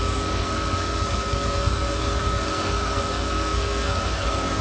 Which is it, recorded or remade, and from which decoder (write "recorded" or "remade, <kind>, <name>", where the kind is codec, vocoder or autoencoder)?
remade, codec, SNAC